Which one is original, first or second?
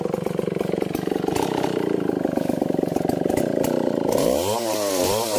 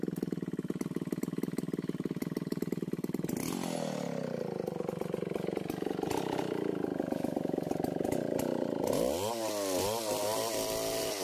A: second